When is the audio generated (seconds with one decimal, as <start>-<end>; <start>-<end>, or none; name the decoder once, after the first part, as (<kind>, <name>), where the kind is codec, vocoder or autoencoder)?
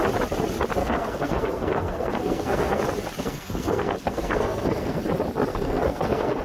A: 0.8-2.8 (codec, SNAC); 3.2-5.0; 5.5-6.4